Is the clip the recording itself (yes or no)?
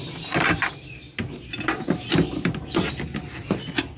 yes